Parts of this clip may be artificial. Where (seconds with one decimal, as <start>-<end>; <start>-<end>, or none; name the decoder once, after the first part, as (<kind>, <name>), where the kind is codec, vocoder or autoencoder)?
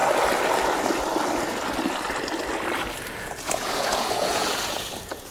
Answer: 3.2-5.3 (vocoder, Vocos)